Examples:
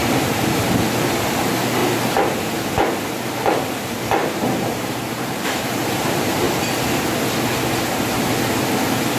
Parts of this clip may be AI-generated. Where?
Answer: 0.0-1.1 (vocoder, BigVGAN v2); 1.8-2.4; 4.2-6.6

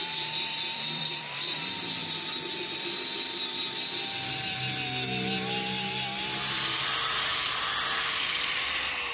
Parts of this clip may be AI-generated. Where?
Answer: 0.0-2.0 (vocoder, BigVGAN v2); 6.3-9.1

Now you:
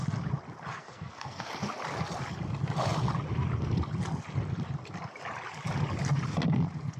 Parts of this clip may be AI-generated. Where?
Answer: 0.7-1.5 (codec, SNAC)

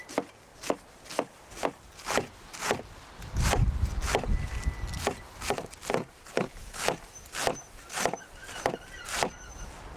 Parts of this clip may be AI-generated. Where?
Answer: none

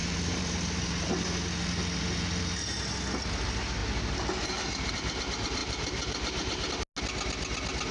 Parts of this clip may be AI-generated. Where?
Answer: 0.0-1.1 (vocoder, BigVGAN v2); 5.6-6.7

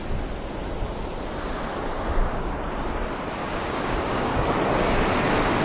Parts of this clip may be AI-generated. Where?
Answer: 2.2-2.7 (codec, DAC); 3.4-4.4

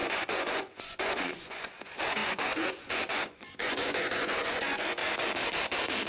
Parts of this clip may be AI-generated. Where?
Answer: 0.0-5.0 (vocoder, Vocos)

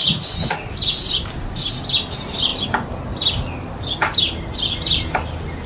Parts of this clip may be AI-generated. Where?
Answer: none